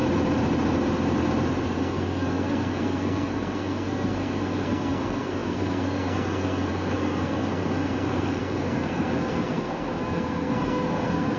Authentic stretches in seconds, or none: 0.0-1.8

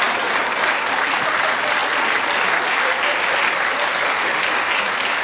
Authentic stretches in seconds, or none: 0.0-5.2

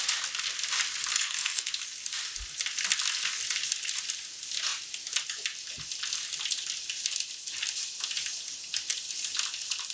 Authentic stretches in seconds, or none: 0.0-1.1; 1.7-9.9

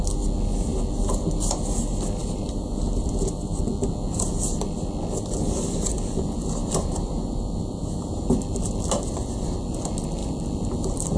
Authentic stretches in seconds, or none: 0.0-2.2; 3.6-6.6; 8.2-11.2

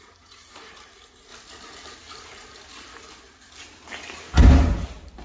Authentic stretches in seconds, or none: 1.3-4.4

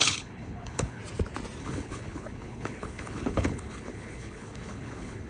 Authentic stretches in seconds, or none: 1.0-1.6